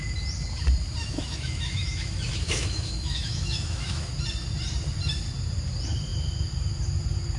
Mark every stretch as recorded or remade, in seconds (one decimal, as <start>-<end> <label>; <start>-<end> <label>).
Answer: 0.0-1.0 recorded; 1.0-4.1 remade; 4.1-7.4 recorded